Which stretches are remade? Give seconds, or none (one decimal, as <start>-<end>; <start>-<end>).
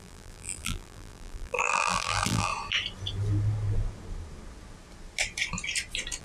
0.0-2.5